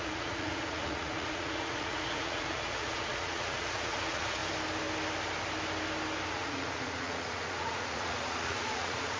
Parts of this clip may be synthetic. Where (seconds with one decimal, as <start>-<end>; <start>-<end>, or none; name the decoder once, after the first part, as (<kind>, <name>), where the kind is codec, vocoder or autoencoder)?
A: 0.0-4.4 (vocoder, Vocos); 6.3-9.2